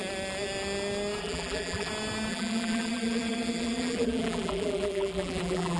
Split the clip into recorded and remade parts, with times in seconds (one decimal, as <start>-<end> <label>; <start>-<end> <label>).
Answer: 0.0-1.2 recorded; 1.2-1.9 remade; 1.9-2.3 recorded; 2.3-5.8 remade